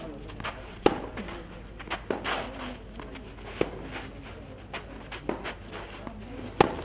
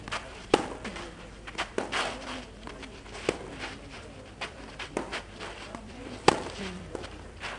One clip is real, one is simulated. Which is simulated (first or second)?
second